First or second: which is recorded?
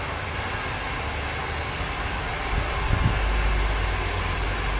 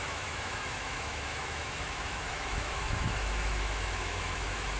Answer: first